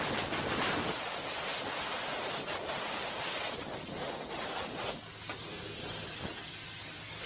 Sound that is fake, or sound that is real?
real